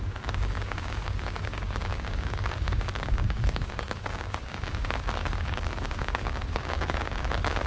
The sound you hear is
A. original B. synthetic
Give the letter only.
B